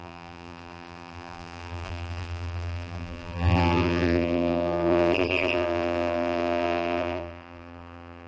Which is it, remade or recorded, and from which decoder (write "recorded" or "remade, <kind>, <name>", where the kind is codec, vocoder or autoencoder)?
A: remade, vocoder, BigVGAN v2